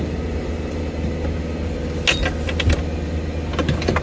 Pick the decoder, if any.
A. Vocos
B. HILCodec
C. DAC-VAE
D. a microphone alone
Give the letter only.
D